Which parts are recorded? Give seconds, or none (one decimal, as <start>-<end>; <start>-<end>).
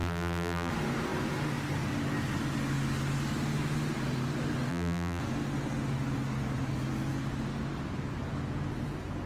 0.7-4.7; 5.2-9.3